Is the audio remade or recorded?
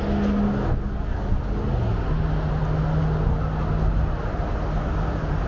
recorded